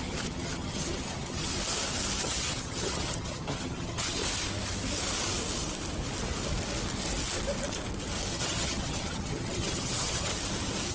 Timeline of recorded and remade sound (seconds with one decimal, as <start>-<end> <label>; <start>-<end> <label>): 0.0-1.5 remade; 1.5-2.2 recorded; 2.2-4.2 remade; 4.2-8.3 recorded; 8.3-10.3 remade; 10.3-10.9 recorded